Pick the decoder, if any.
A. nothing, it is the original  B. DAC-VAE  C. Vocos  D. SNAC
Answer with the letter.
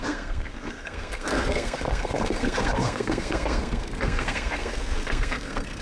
D